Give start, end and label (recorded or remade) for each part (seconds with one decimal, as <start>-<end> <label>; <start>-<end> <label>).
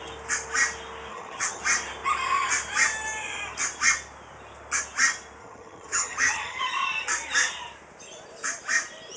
0.0-1.1 recorded; 1.1-1.6 remade; 1.6-5.4 recorded; 5.4-6.6 remade; 6.6-9.2 recorded